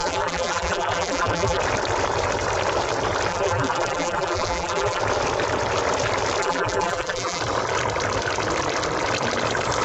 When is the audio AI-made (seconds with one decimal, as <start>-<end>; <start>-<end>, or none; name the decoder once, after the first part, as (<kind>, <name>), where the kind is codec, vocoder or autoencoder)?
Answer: 0.0-1.6 (vocoder, BigVGAN v2); 3.3-5.0; 6.4-7.4